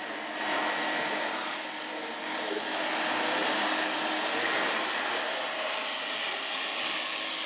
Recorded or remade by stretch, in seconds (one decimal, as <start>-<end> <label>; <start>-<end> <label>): 0.0-7.5 recorded